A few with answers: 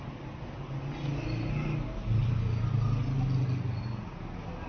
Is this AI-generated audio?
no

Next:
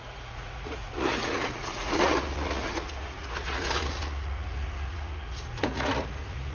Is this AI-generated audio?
yes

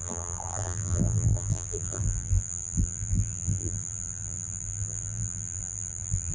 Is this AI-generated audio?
yes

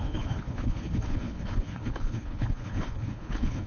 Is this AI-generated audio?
yes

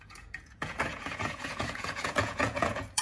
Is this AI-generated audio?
yes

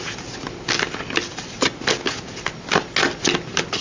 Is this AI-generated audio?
no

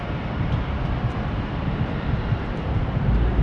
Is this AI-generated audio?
yes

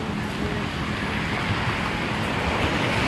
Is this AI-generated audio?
no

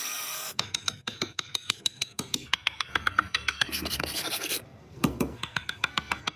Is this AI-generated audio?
yes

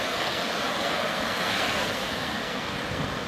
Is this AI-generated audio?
yes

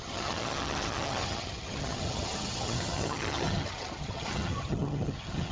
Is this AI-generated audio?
yes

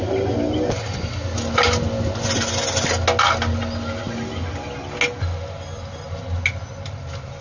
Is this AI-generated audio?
no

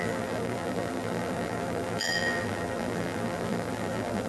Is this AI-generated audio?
yes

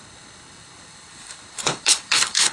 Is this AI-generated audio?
yes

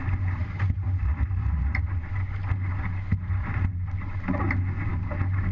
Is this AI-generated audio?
no